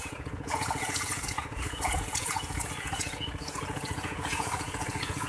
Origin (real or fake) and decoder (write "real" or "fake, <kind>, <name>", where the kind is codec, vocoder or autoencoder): fake, vocoder, Vocos